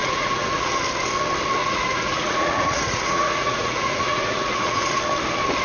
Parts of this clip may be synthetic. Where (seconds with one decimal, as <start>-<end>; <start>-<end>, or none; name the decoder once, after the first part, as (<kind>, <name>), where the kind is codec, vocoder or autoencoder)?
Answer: 0.0-0.7 (vocoder, Vocos); 1.6-5.0